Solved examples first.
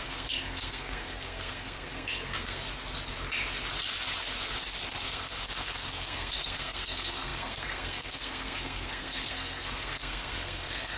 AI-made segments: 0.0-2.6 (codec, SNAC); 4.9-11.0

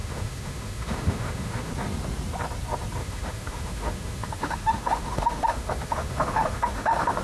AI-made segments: 0.0-1.7 (autoencoder, DAC-VAE); 3.0-7.2

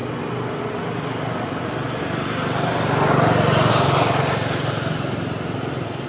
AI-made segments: none

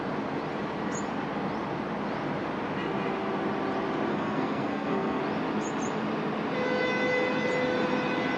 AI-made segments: 4.1-5.2 (codec, SNAC)

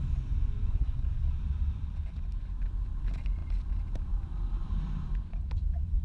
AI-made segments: 0.7-1.3 (codec, SNAC)

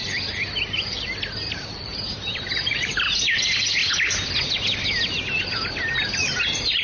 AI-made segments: 1.9-2.9 (vocoder, BigVGAN v2); 6.2-6.8

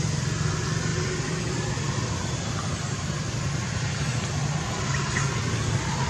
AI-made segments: 0.9-4.6 (vocoder, BigVGAN v2)

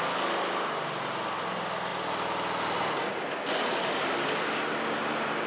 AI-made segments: 1.9-3.7 (vocoder, BigVGAN v2)